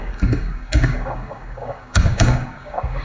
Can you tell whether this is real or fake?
fake